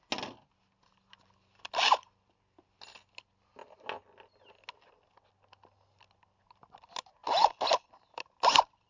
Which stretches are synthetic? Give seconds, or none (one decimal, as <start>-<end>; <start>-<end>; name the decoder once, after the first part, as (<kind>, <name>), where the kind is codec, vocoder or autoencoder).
none